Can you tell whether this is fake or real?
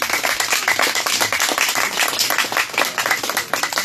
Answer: real